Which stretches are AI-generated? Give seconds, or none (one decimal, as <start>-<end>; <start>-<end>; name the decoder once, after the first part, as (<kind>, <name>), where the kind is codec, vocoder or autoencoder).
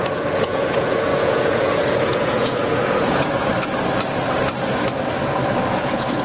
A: 0.0-3.5 (vocoder, Vocos); 5.7-6.2